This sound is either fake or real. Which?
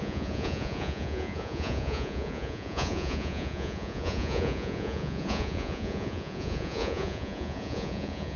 fake